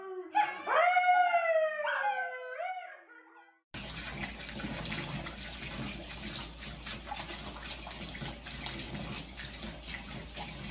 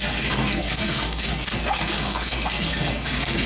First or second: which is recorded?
first